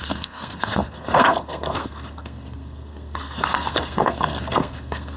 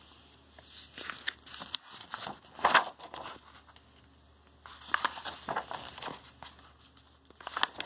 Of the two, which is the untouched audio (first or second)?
second